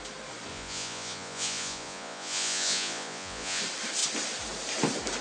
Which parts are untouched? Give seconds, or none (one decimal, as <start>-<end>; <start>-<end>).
0.0-0.5; 3.6-5.2